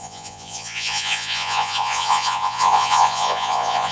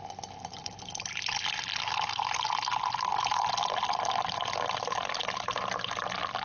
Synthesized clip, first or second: first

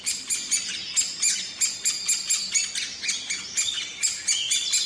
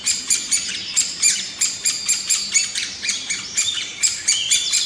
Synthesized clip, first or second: second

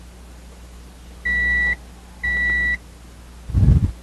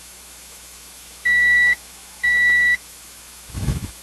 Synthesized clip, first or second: second